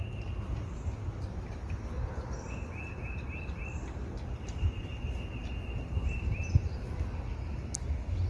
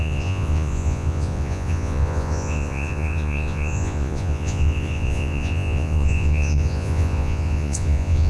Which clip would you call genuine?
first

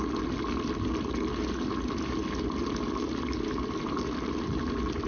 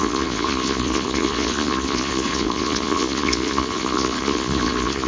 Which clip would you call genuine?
first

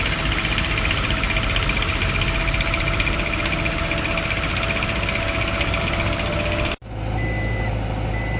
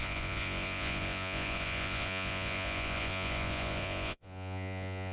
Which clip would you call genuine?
first